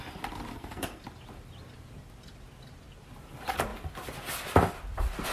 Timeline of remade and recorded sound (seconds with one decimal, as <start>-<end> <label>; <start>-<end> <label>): 0.0-0.5 recorded; 0.5-1.0 remade; 1.0-5.3 recorded